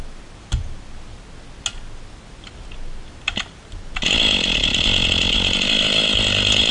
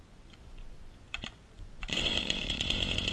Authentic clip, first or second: first